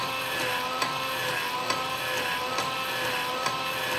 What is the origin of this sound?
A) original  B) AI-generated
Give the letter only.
B